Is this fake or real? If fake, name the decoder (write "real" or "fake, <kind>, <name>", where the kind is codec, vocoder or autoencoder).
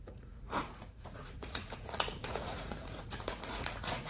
fake, vocoder, Vocos